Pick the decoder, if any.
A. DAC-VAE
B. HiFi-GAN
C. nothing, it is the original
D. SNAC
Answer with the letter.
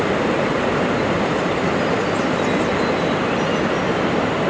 C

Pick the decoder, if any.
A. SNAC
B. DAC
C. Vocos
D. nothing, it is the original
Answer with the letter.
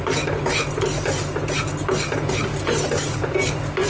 D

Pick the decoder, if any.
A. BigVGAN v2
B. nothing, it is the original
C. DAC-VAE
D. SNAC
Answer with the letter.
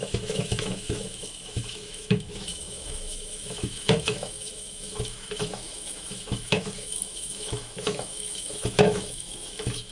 C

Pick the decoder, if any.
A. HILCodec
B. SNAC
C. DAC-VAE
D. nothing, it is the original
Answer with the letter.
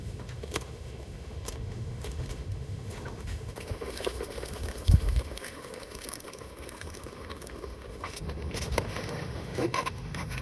C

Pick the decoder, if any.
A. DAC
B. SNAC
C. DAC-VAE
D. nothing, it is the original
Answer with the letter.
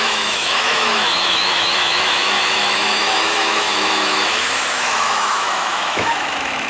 C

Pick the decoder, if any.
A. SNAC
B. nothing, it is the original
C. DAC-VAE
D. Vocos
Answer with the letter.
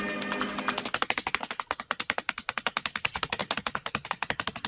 B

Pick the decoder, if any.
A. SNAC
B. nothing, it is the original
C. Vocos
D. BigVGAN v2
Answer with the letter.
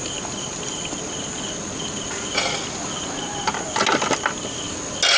B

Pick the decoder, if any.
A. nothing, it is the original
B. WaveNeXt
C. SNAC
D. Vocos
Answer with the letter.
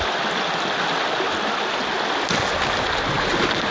A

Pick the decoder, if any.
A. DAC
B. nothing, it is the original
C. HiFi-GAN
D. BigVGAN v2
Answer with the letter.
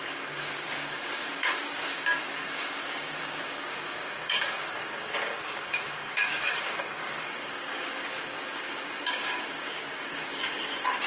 A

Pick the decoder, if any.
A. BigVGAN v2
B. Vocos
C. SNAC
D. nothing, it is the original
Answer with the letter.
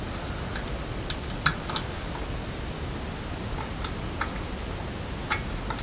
D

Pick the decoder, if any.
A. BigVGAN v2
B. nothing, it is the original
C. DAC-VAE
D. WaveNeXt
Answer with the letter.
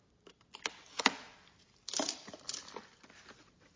B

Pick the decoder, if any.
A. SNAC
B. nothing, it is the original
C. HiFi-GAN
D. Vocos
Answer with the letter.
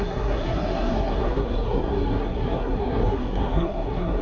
A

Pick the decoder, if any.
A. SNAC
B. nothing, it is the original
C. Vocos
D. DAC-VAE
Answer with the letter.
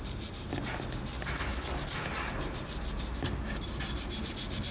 B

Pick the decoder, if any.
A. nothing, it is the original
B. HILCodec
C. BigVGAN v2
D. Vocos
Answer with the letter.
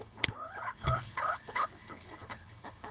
B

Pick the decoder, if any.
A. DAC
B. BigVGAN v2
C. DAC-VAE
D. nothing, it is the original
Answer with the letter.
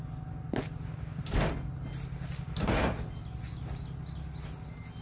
D